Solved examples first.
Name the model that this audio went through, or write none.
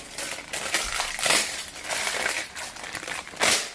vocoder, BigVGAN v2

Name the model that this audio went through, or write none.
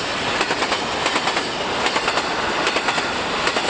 none